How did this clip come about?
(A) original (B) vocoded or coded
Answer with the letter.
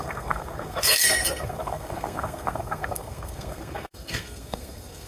B